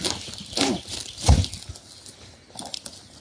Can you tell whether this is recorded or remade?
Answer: recorded